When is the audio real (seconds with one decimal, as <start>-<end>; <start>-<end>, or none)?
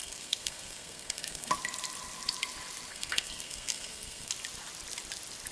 1.5-2.9; 4.3-5.5